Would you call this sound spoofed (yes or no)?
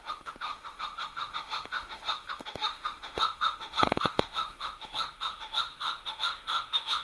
yes